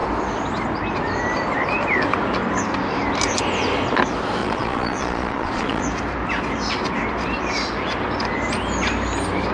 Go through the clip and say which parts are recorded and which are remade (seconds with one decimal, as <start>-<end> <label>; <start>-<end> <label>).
0.0-4.4 recorded; 4.4-5.8 remade; 5.8-9.5 recorded